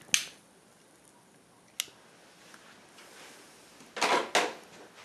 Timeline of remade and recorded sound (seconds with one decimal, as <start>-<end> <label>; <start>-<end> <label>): 0.0-5.0 recorded